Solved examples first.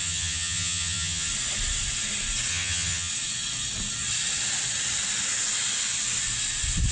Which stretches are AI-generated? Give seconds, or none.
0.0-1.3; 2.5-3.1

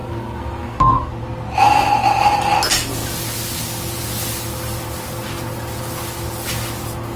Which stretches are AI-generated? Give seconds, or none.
0.0-1.1

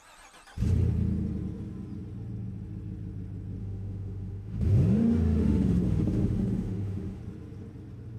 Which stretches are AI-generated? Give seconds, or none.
3.6-7.2

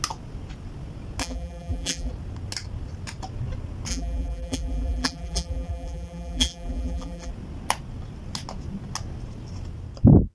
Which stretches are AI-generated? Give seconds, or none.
1.2-2.1; 3.9-7.3

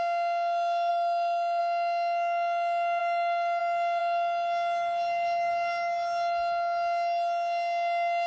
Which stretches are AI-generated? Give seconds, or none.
0.9-1.6; 3.0-3.6

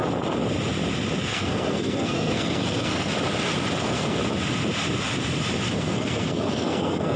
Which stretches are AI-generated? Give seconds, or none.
1.2-3.1; 3.8-4.2; 5.7-7.2

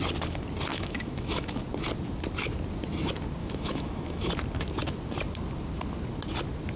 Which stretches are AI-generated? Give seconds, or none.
0.7-1.6; 3.4-4.3

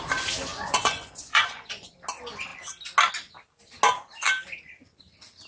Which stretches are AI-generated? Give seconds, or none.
0.5-1.9